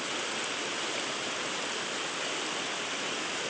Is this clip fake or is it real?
real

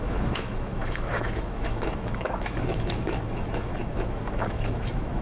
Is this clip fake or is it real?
fake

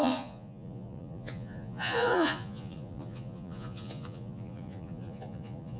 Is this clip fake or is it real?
fake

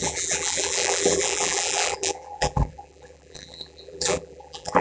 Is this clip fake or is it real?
fake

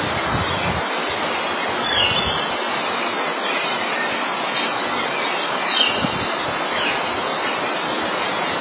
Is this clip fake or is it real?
real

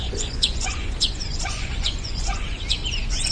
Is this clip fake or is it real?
fake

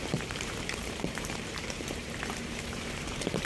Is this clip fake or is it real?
fake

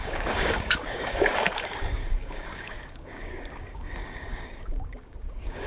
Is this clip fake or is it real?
fake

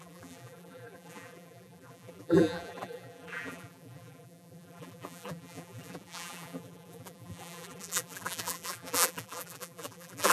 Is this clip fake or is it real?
fake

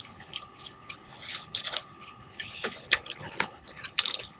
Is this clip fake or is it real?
fake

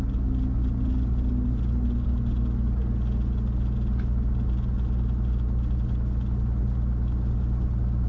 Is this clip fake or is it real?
real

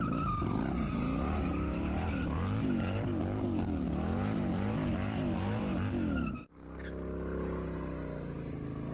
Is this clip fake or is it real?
real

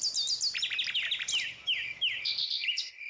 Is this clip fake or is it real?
real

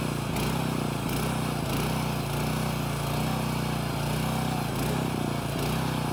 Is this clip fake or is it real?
real